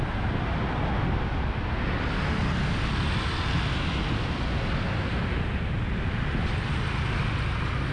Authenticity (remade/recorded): recorded